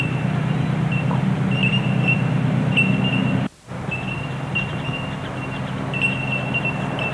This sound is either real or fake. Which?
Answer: real